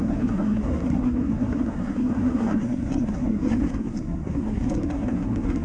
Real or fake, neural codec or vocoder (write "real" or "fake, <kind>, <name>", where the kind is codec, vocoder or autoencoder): fake, codec, SNAC